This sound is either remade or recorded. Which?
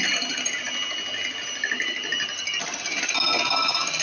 recorded